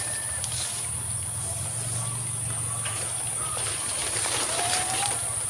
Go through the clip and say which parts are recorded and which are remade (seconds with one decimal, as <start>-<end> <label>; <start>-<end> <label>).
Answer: 0.0-4.0 recorded; 4.0-5.5 remade